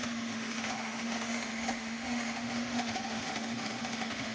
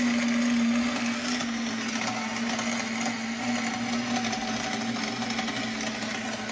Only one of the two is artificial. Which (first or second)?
first